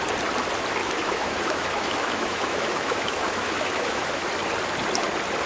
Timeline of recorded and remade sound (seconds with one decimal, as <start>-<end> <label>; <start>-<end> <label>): 0.0-0.8 recorded; 0.8-4.1 remade; 4.1-5.5 recorded